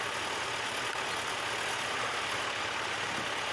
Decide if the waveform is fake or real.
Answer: real